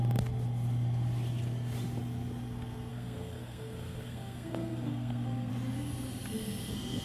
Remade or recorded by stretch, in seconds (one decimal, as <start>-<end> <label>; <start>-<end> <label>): 0.0-2.9 recorded; 2.9-5.5 remade; 5.5-7.0 recorded